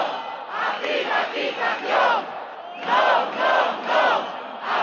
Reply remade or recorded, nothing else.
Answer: recorded